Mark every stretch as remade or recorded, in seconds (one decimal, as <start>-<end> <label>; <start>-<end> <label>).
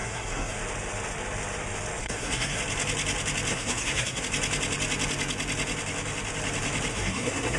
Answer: 0.0-0.6 remade; 0.6-2.0 recorded; 2.0-2.6 remade; 2.6-3.5 recorded; 3.5-4.2 remade; 4.2-6.9 recorded; 6.9-7.6 remade